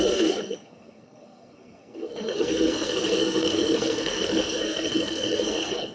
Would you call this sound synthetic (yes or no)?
yes